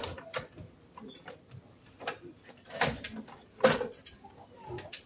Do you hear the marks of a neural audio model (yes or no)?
yes